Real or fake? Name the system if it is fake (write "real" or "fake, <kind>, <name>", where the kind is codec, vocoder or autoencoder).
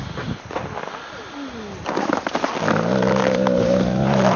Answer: real